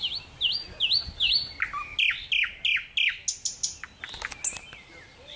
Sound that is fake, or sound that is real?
real